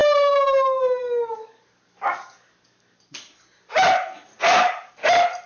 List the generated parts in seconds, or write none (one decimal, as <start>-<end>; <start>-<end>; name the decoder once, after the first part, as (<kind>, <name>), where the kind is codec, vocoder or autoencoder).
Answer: 0.0-3.2 (codec, DAC); 4.3-4.9

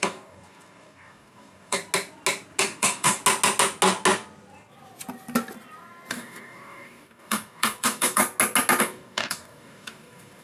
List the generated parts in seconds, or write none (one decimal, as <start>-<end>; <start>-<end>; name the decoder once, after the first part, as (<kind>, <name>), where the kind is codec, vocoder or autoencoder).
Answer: 0.0-1.8 (codec, DAC); 2.6-3.2; 6.1-8.2; 8.8-10.4